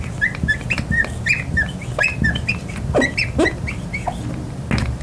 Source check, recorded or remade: recorded